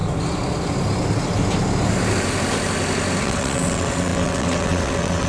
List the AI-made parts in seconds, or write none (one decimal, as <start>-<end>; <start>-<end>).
3.2-5.3